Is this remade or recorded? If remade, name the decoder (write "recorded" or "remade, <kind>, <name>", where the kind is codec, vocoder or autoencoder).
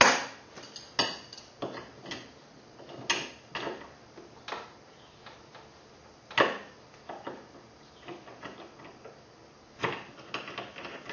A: recorded